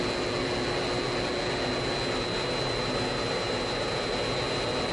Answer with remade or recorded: recorded